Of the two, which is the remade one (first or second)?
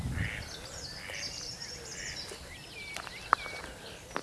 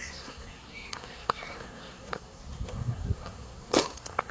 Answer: second